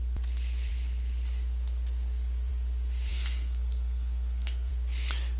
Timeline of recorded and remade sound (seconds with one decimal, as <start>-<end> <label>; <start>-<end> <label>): 0.0-3.1 recorded; 3.1-4.7 remade; 4.7-5.4 recorded